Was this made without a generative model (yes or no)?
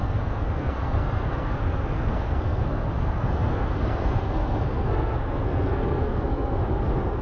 no